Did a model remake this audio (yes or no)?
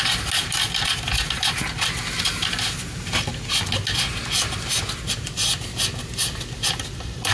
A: no